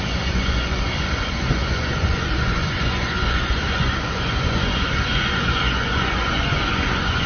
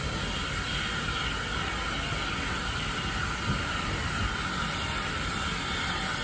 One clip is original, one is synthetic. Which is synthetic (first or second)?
first